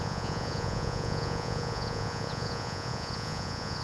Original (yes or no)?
no